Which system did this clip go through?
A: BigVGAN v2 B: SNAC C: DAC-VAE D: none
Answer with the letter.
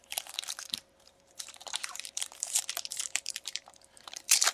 A